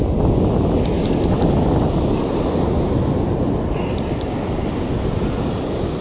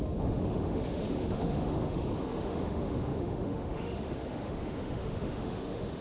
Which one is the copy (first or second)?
second